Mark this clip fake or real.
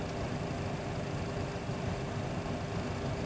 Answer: real